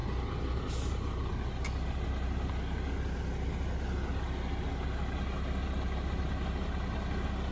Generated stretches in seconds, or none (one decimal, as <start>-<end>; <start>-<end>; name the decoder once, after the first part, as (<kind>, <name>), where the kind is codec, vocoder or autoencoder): none